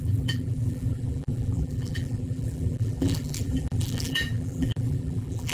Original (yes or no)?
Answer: no